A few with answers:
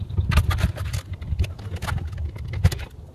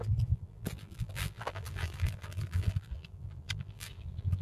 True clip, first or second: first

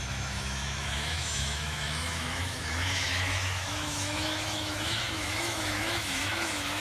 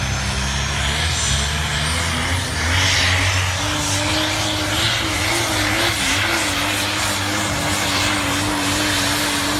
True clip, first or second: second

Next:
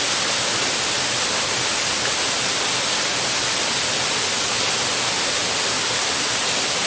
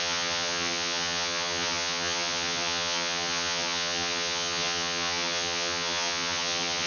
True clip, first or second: first